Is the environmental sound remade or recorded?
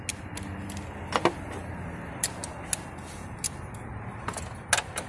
recorded